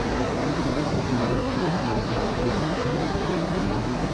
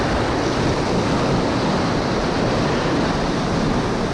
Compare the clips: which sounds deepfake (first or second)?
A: first